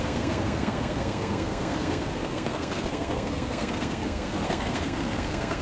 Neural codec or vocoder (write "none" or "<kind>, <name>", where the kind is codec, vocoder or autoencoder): codec, SNAC